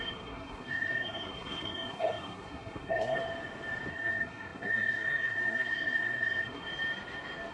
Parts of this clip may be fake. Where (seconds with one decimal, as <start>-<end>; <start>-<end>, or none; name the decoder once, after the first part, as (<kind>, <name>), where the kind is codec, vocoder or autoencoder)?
0.0-3.2 (codec, SNAC); 3.9-6.7